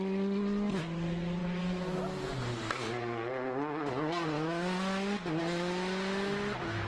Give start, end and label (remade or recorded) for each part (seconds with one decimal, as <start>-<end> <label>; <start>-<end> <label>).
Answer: 0.0-6.9 recorded